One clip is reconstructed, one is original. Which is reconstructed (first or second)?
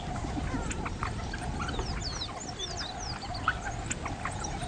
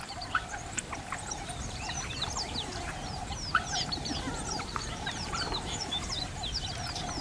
second